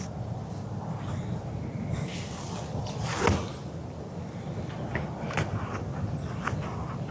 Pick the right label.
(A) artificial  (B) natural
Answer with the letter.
B